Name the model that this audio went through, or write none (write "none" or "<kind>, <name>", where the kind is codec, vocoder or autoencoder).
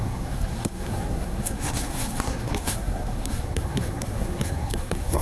codec, SNAC